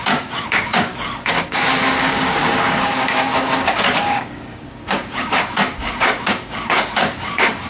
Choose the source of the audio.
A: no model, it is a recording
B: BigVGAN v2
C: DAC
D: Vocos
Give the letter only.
C